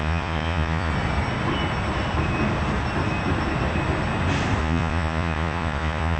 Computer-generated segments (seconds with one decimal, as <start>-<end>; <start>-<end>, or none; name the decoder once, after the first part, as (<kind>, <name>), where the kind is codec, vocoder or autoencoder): 0.0-0.9 (vocoder, Vocos); 4.6-6.2